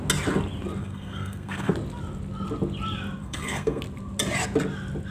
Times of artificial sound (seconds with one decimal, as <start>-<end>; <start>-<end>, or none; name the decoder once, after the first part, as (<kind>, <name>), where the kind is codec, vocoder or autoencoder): 0.8-1.7 (codec, SNAC); 3.2-3.8